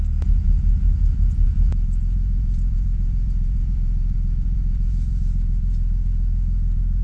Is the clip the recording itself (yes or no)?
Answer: no